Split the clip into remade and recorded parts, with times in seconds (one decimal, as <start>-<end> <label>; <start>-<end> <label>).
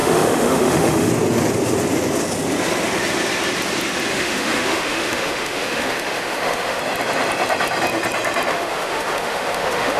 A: 0.0-1.1 remade; 1.1-4.1 recorded; 4.1-6.8 remade; 6.8-8.5 recorded; 8.5-10.0 remade